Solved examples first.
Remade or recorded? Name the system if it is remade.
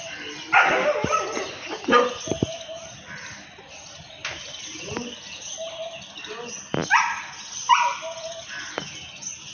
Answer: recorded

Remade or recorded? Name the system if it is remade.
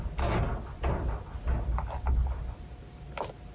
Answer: recorded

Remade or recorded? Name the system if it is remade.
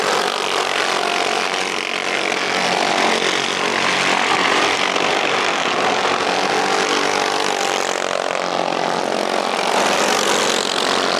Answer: recorded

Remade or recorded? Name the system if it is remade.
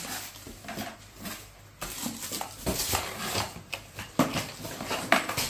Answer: remade, vocoder, BigVGAN v2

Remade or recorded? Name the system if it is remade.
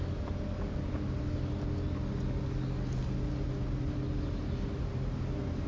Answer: recorded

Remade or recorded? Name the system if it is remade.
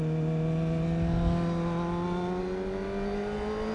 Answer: recorded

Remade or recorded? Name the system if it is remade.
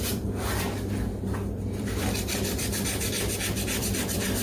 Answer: remade, vocoder, BigVGAN v2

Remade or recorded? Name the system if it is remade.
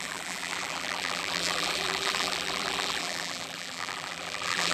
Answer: remade, vocoder, BigVGAN v2